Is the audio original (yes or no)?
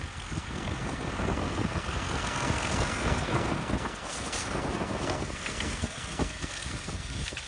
no